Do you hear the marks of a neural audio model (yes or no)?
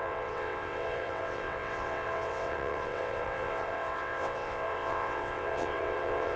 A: yes